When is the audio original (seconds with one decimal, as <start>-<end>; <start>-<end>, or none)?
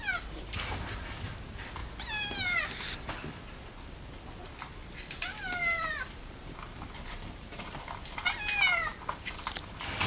1.8-5.3